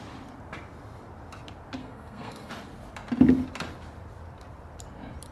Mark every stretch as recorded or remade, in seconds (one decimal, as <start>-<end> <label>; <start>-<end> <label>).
0.0-1.8 recorded; 1.8-2.5 remade; 2.5-5.3 recorded

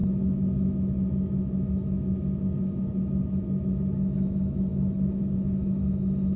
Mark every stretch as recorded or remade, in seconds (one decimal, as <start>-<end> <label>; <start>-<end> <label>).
0.0-6.4 remade

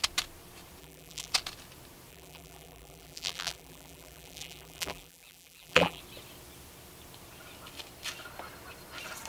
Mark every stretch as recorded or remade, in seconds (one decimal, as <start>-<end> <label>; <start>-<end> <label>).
0.0-0.8 recorded; 0.8-1.3 remade; 1.3-2.1 recorded; 2.1-6.0 remade; 6.0-9.3 recorded

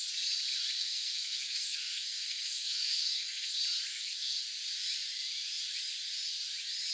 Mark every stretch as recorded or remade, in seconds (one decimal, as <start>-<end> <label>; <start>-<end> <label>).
0.0-0.8 recorded; 0.8-3.5 remade; 3.5-3.9 recorded; 3.9-4.4 remade; 4.4-6.9 recorded

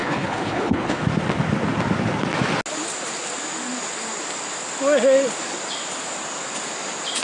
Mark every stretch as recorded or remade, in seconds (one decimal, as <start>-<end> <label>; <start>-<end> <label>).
0.0-1.0 remade; 1.0-7.2 recorded

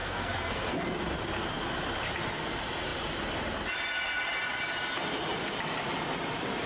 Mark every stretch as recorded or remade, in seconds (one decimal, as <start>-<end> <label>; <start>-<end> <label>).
0.0-0.8 remade; 0.8-6.7 recorded